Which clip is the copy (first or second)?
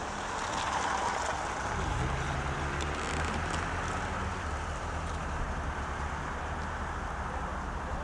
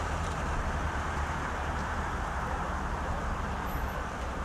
second